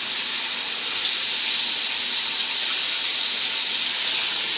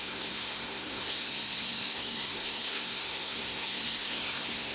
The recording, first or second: first